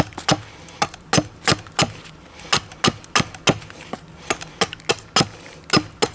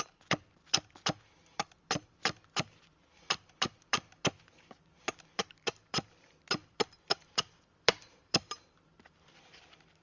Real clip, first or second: first